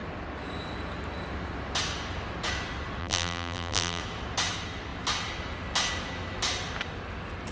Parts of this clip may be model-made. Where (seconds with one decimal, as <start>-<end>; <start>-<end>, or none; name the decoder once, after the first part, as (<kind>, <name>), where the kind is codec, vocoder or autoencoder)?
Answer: 3.0-4.0 (vocoder, BigVGAN v2)